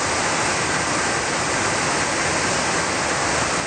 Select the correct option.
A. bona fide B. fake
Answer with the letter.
A